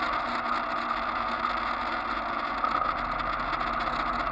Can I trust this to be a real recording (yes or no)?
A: yes